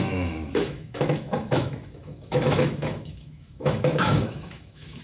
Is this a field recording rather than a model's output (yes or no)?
no